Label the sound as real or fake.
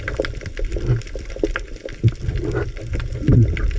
real